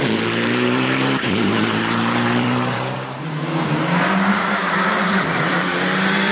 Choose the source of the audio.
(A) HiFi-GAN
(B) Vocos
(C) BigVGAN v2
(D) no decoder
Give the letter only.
C